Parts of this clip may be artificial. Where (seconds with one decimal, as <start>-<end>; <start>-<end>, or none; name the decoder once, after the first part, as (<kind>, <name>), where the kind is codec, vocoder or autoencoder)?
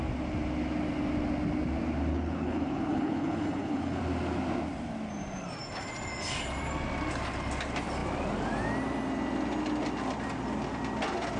2.1-4.0 (codec, HILCodec)